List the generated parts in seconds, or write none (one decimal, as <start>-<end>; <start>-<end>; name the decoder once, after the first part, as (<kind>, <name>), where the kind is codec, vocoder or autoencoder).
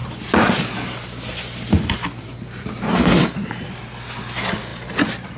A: 4.7-5.4 (vocoder, BigVGAN v2)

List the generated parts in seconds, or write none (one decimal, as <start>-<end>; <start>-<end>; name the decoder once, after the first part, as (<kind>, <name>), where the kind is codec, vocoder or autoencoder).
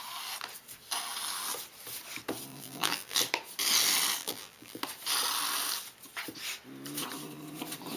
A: 2.5-3.2 (vocoder, BigVGAN v2); 4.2-4.8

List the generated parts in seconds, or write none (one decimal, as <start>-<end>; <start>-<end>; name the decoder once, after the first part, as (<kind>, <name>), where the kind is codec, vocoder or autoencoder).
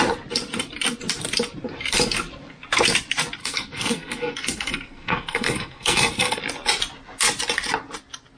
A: 3.4-6.4 (codec, SNAC)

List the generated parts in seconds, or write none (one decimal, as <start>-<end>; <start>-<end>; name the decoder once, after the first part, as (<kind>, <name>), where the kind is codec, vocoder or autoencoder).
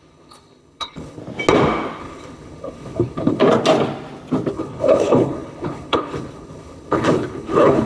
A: 0.0-1.2 (codec, HILCodec); 2.0-3.4; 4.5-7.9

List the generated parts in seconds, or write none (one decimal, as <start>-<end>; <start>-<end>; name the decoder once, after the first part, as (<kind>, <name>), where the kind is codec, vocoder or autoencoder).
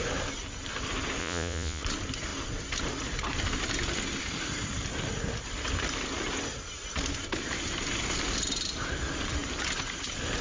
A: 1.2-1.8 (vocoder, Vocos)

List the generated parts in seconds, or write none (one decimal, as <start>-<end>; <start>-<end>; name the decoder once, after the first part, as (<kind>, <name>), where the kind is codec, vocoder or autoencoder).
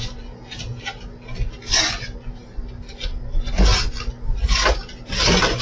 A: none